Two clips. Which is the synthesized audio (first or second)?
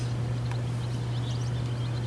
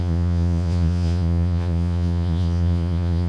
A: second